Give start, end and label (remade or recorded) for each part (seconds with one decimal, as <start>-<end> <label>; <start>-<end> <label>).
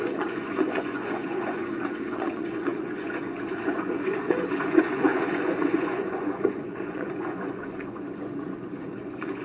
0.0-9.4 remade